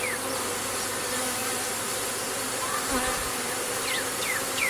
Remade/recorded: recorded